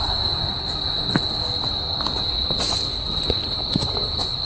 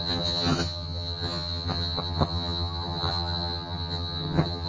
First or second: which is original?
first